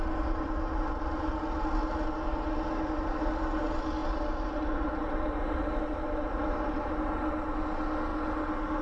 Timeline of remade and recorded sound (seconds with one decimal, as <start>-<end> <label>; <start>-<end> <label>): 0.0-8.8 recorded